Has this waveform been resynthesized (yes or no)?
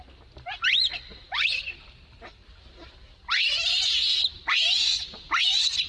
no